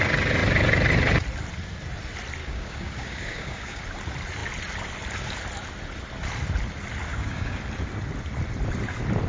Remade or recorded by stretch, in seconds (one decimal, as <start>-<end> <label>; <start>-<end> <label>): 0.0-2.4 recorded; 2.4-3.8 remade; 3.8-7.1 recorded; 7.1-7.6 remade; 7.6-9.3 recorded